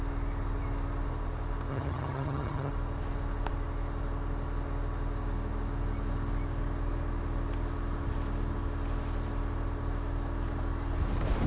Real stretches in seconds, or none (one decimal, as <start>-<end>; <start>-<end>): 0.0-1.7; 2.7-11.5